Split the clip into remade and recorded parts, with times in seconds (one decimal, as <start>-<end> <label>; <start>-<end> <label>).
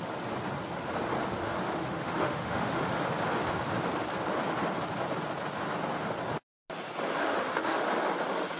0.0-1.4 recorded; 1.4-2.9 remade; 2.9-7.2 recorded; 7.2-7.8 remade; 7.8-8.6 recorded